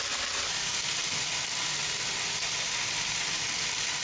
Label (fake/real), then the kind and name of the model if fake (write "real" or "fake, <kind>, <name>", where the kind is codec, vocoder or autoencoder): real